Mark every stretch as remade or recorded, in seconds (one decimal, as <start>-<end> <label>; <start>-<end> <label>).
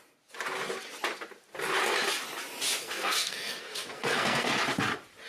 0.0-2.8 recorded; 2.8-4.5 remade; 4.5-5.3 recorded